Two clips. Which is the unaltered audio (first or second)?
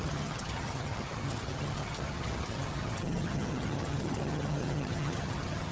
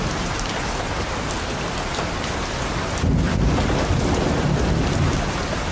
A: second